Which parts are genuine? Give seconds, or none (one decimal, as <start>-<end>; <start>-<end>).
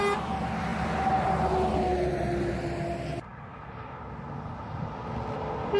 0.0-5.8